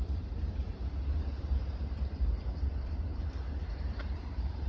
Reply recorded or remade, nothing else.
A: remade